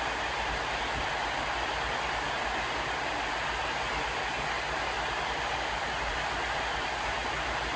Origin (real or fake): real